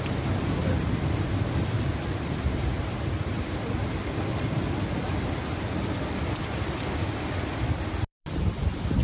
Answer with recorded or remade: remade